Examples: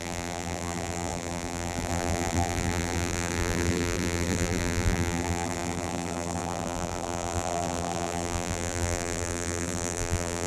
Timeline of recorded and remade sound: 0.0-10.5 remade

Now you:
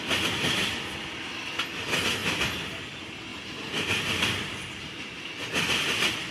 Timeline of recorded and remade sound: 0.0-3.3 recorded; 3.3-5.2 remade; 5.2-6.3 recorded

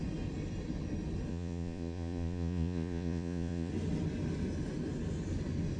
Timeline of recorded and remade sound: 0.0-1.3 recorded; 1.3-3.7 remade; 3.7-5.8 recorded

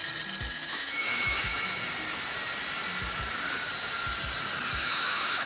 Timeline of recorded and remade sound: 0.0-0.5 recorded; 0.5-1.5 remade; 1.5-4.8 recorded; 4.8-5.5 remade

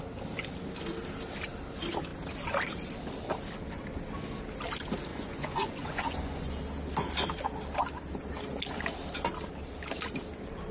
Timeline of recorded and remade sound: 0.0-5.1 recorded; 5.1-6.5 remade; 6.5-10.7 recorded